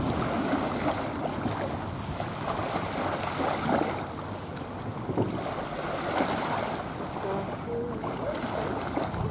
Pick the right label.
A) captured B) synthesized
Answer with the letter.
A